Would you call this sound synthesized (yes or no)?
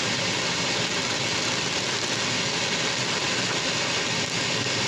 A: no